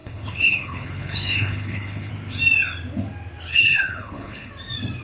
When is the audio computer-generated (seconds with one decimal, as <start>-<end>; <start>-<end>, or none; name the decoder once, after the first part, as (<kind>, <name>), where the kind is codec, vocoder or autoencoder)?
0.0-2.1 (codec, HILCodec); 3.5-4.5